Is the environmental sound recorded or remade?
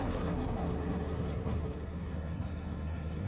remade